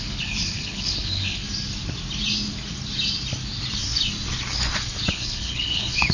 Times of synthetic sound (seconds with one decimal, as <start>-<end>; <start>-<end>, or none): 0.0-1.4; 5.1-6.1